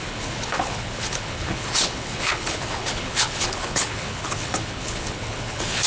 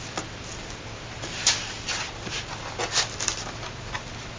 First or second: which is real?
second